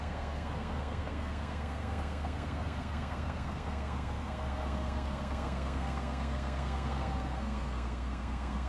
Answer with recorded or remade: remade